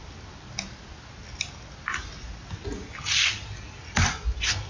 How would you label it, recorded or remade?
recorded